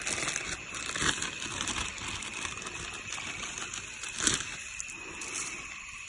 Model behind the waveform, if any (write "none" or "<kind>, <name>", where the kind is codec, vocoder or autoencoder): none